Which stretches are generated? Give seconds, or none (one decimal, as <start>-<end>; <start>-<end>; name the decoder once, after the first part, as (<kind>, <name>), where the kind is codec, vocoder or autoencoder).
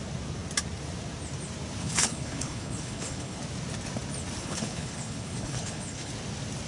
1.8-3.4 (codec, HILCodec); 4.4-6.1